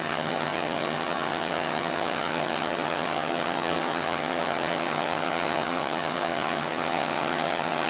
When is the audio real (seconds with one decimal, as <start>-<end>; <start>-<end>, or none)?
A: none

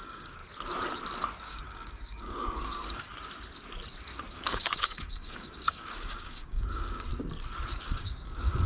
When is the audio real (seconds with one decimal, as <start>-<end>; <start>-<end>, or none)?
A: 0.4-1.4; 3.1-4.3; 7.1-7.7